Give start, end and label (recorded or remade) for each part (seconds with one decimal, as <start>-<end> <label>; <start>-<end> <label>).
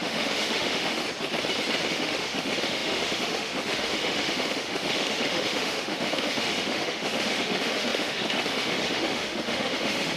0.0-1.0 remade; 1.0-1.9 recorded; 1.9-10.2 remade